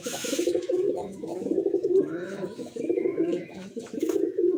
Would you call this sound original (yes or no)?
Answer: no